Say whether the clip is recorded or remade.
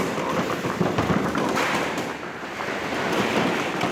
recorded